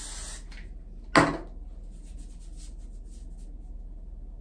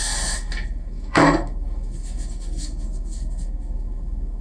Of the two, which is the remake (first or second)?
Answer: second